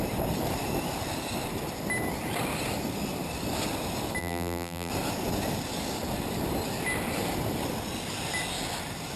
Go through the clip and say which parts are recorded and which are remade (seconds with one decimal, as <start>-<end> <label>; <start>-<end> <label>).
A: 0.0-4.2 recorded; 4.2-4.9 remade; 4.9-9.2 recorded